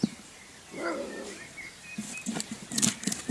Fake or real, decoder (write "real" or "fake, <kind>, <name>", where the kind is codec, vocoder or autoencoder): fake, vocoder, BigVGAN v2